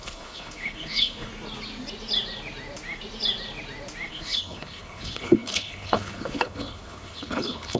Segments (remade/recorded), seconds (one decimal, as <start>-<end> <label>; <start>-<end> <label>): 0.0-1.3 remade; 1.3-4.1 recorded; 4.1-7.8 remade